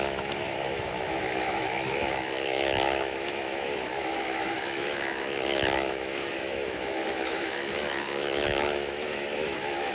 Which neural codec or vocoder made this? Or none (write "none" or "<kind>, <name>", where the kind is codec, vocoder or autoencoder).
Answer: autoencoder, DAC-VAE